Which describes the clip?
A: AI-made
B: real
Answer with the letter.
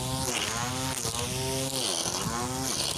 B